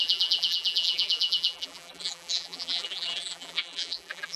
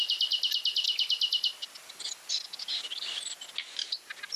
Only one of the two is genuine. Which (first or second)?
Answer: second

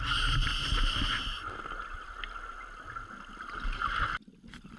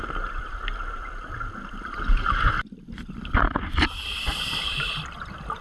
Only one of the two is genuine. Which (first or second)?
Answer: first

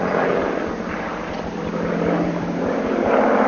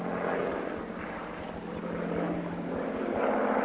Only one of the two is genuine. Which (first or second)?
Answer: second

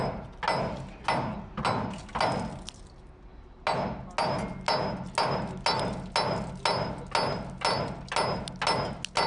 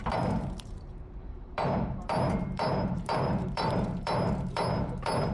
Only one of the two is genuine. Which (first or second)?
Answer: first